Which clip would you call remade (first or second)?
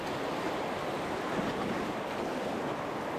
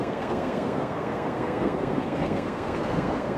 second